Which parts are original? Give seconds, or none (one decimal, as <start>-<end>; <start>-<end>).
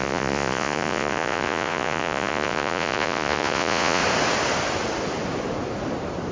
4.0-6.3